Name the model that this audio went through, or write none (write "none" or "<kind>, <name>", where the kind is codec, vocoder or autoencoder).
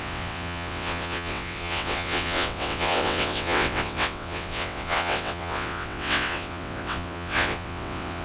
vocoder, WaveNeXt